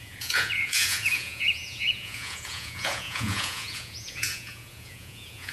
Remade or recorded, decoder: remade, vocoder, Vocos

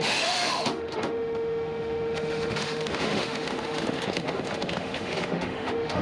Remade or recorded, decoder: remade, autoencoder, DAC-VAE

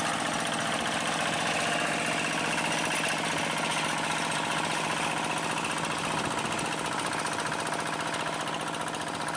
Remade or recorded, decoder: recorded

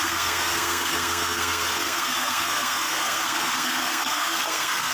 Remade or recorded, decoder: remade, codec, SNAC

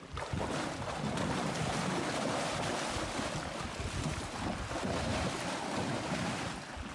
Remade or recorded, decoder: recorded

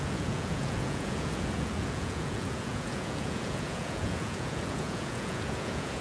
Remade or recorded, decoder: remade, vocoder, Vocos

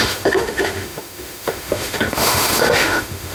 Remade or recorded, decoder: remade, autoencoder, DAC-VAE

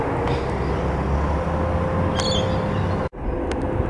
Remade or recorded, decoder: recorded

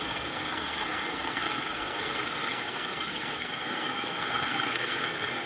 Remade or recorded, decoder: remade, codec, SNAC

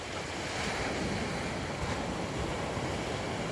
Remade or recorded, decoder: recorded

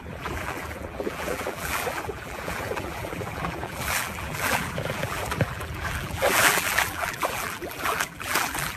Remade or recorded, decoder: remade, vocoder, BigVGAN v2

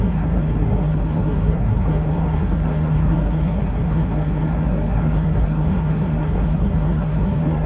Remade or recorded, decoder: remade, codec, SNAC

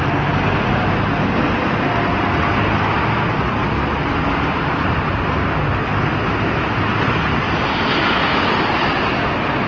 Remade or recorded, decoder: recorded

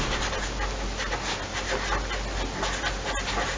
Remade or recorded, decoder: recorded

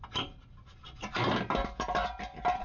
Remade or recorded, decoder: recorded